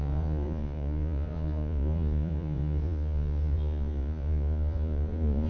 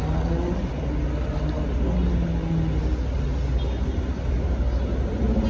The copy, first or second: first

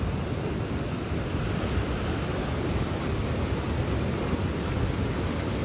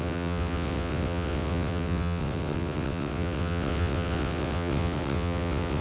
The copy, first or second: second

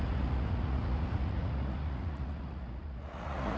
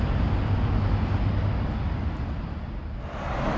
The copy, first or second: first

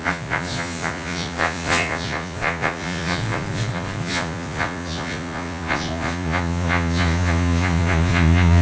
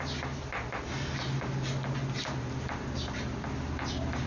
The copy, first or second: first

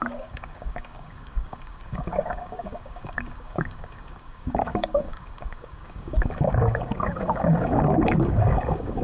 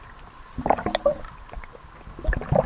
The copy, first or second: first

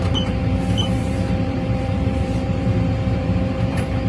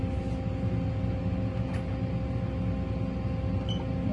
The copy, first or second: first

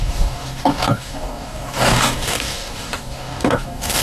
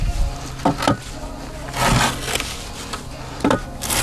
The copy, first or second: first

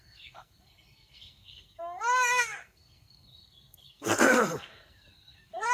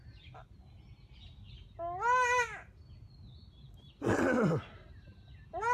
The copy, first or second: first